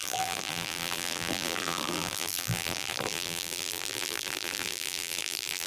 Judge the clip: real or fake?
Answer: fake